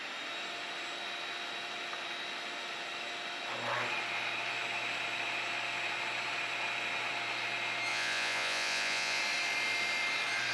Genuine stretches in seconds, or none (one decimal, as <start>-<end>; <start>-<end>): 0.0-7.9; 9.2-10.5